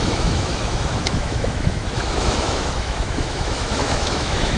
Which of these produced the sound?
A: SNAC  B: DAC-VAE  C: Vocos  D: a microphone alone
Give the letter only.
B